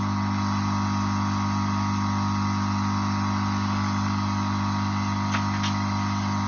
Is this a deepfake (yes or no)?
no